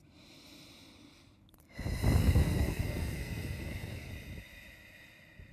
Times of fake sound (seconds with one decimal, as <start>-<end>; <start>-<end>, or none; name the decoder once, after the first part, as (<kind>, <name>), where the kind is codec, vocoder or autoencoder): 2.2-4.1 (codec, SNAC)

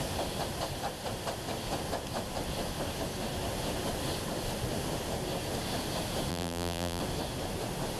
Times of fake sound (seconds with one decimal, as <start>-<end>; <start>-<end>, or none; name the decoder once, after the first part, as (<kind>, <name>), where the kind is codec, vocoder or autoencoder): 6.3-7.0 (vocoder, BigVGAN v2)

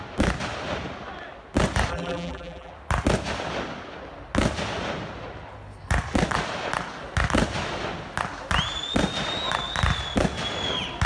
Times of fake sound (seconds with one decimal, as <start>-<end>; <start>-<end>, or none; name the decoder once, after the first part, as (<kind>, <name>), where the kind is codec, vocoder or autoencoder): 1.9-2.7 (vocoder, BigVGAN v2)

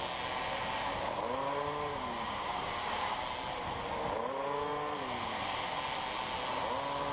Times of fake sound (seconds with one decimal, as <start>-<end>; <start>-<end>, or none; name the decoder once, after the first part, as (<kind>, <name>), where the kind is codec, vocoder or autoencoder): 1.9-3.2 (codec, DAC)

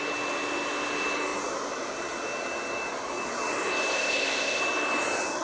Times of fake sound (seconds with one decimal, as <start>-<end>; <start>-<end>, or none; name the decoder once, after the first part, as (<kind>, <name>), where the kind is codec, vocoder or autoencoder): 3.9-4.6 (codec, ZipCodec)